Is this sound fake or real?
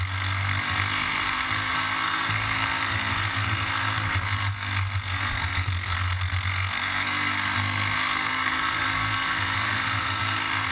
fake